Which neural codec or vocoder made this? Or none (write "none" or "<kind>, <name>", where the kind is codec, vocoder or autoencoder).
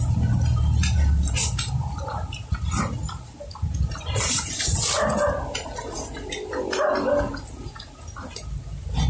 none